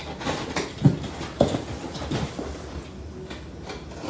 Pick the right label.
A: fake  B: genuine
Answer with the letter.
B